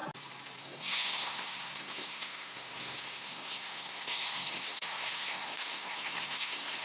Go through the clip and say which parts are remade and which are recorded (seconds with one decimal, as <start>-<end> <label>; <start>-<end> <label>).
0.0-0.6 recorded; 0.6-6.8 remade